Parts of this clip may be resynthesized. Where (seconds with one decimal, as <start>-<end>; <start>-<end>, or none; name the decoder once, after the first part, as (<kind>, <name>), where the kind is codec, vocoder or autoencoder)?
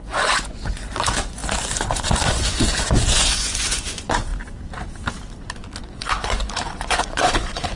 0.0-4.3 (vocoder, Vocos); 5.8-7.8